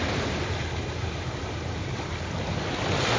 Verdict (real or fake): real